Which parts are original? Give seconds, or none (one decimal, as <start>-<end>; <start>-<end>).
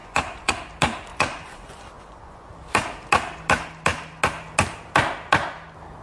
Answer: 0.5-1.1; 2.5-6.0